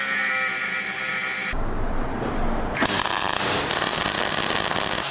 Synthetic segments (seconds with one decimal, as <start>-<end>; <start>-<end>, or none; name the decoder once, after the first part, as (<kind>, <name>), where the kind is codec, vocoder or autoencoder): none